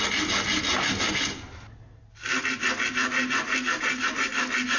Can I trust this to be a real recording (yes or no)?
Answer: yes